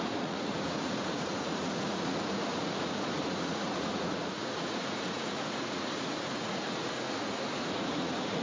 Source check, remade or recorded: remade